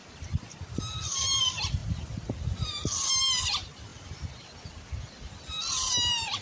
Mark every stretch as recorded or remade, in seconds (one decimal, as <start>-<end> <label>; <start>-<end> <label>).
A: 0.0-1.8 recorded; 1.8-2.7 remade; 2.7-3.9 recorded; 3.9-5.0 remade; 5.0-6.4 recorded